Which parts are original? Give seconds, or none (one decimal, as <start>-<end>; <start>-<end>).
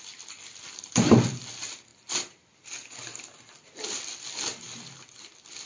0.0-1.9; 4.0-4.5; 5.3-5.7